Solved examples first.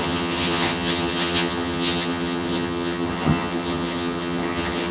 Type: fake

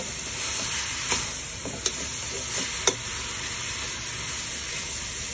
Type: real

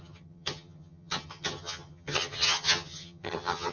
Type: fake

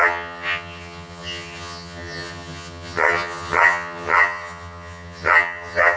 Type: fake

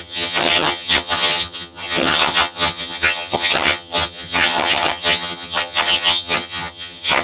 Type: fake